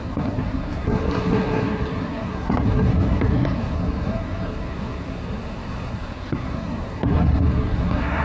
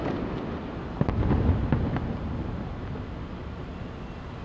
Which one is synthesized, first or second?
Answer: first